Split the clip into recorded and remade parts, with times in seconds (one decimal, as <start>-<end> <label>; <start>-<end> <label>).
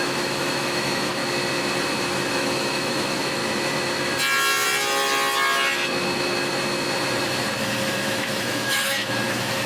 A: 0.0-1.2 remade; 1.2-2.3 recorded; 2.3-3.4 remade; 3.4-7.6 recorded; 7.6-9.7 remade